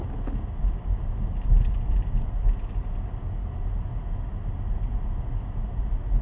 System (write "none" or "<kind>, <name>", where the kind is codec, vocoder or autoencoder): none